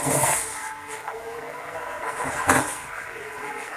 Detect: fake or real fake